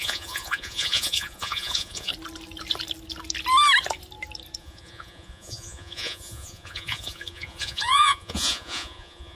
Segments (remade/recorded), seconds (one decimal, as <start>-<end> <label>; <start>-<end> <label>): 0.0-2.1 remade; 2.1-4.6 recorded; 4.6-9.3 remade